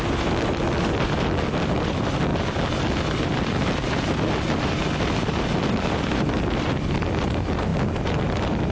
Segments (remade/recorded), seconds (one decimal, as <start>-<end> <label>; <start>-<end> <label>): 0.0-8.7 recorded